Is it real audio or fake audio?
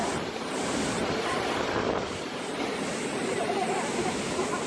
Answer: real